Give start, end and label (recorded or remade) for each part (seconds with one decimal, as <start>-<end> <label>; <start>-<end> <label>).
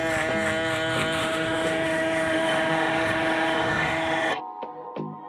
0.0-1.2 recorded; 1.2-4.4 remade; 4.4-5.3 recorded